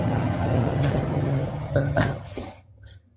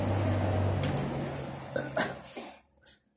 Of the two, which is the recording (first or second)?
second